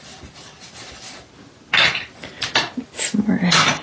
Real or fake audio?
real